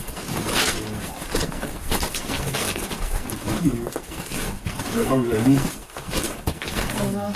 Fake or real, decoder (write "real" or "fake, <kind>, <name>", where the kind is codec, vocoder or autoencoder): fake, codec, SNAC